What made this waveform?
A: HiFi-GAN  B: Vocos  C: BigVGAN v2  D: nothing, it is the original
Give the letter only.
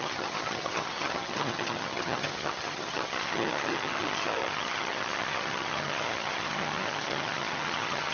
A